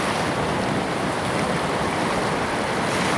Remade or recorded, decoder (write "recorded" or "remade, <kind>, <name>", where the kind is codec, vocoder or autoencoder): recorded